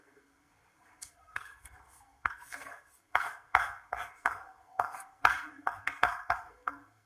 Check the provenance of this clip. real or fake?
fake